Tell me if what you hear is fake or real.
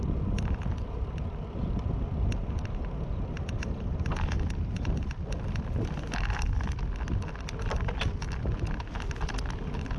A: real